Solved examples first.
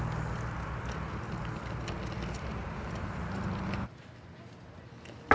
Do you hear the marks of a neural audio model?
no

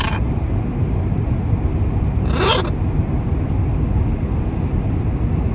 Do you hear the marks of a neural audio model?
no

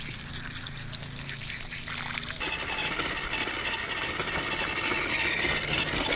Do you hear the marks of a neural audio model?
no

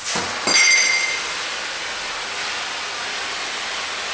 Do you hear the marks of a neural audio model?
no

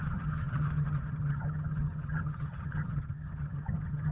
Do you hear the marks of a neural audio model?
yes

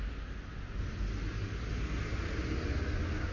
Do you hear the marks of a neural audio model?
no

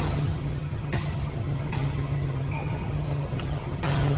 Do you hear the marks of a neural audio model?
yes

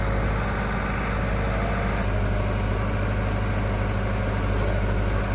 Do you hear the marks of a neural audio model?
no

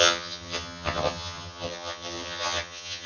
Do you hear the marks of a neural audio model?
yes